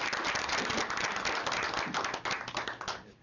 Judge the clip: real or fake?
real